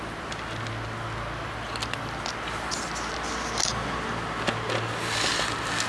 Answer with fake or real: real